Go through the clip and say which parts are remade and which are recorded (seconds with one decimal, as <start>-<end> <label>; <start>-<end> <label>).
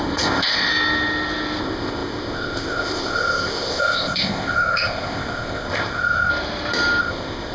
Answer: 0.0-0.7 remade; 0.7-1.6 recorded; 1.6-6.3 remade; 6.3-7.0 recorded; 7.0-7.5 remade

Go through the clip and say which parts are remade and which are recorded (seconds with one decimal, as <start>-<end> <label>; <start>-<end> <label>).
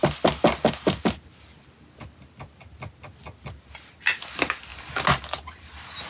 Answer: 0.0-6.1 recorded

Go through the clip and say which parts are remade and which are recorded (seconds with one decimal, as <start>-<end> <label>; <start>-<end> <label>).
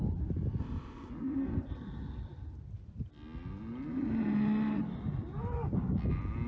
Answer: 0.0-0.6 recorded; 0.6-1.1 remade; 1.1-6.5 recorded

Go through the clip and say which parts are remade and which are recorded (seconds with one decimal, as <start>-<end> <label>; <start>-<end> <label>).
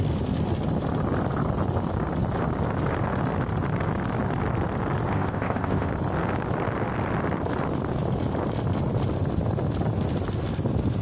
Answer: 0.0-5.1 recorded; 5.1-5.9 remade; 5.9-11.0 recorded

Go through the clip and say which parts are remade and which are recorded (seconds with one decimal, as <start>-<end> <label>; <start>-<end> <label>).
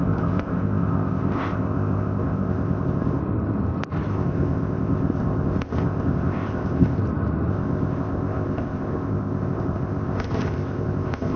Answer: 0.0-3.2 remade; 3.2-4.1 recorded; 4.1-7.0 remade; 7.0-7.5 recorded; 7.5-11.4 remade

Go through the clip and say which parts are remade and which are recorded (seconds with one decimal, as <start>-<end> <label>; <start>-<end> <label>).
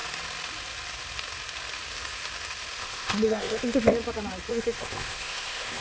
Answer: 0.0-2.8 recorded; 2.8-3.9 remade; 3.9-4.5 recorded; 4.5-5.8 remade